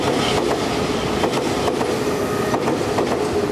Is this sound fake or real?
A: real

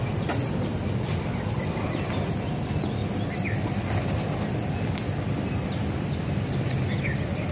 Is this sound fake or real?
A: real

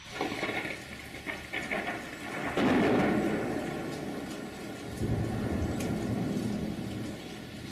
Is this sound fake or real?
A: real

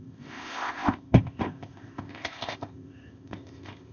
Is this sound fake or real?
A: fake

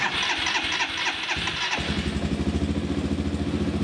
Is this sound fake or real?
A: real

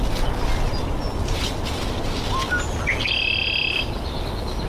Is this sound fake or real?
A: real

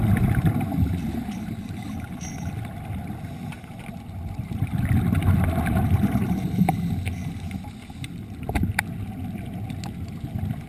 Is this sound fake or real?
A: real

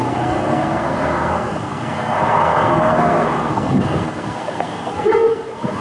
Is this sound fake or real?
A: fake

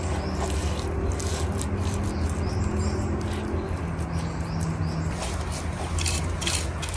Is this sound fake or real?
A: real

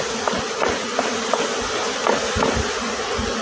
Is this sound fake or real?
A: real